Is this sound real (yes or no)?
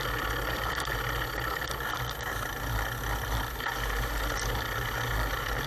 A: yes